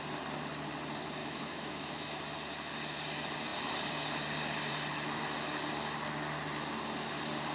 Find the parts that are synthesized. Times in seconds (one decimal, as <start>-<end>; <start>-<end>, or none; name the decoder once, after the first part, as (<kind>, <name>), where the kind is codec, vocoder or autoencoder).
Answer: 1.2-2.2 (autoencoder, DAC-VAE)